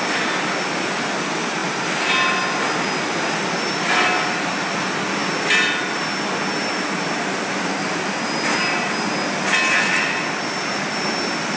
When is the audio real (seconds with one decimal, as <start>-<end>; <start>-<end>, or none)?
0.0-11.6